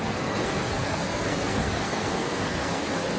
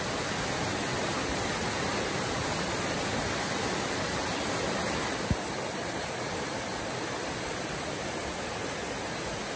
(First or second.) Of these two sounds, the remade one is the first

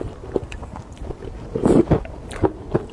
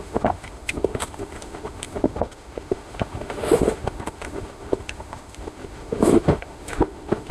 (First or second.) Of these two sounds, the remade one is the second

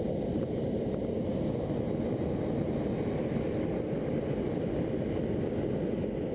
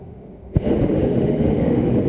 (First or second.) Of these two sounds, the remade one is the second